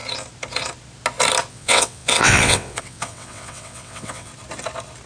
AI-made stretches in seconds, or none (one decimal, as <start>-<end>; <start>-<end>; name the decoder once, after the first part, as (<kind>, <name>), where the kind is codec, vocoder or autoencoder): 1.5-4.3 (vocoder, WaveNeXt)

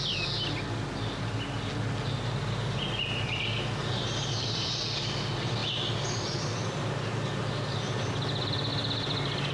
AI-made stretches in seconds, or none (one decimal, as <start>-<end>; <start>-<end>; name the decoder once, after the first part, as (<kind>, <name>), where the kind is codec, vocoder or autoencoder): 3.8-4.8 (vocoder, BigVGAN v2)

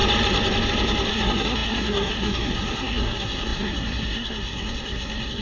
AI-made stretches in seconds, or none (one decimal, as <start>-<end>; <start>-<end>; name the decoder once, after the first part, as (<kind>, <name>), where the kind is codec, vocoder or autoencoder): 1.1-5.4 (codec, SNAC)

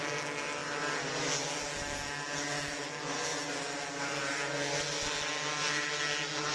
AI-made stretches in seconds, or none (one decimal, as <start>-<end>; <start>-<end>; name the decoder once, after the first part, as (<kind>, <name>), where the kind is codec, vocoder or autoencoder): none

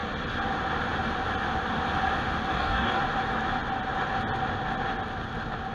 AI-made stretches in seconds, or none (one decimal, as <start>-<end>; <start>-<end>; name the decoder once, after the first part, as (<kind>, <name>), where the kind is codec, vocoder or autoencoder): 2.5-3.0 (codec, DAC)

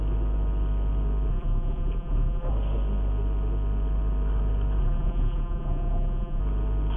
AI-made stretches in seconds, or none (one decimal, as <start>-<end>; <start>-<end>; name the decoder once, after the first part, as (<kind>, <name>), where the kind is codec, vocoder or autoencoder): 1.3-2.5 (vocoder, BigVGAN v2); 4.8-6.4

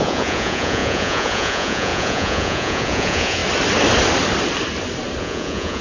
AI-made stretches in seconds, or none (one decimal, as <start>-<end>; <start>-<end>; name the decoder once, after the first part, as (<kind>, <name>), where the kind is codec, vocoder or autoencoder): 0.0-3.4 (vocoder, Vocos); 5.2-5.8

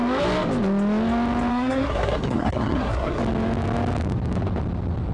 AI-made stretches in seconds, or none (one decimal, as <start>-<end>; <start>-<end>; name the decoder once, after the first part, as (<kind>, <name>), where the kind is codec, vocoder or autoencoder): 1.5-3.2 (codec, SNAC)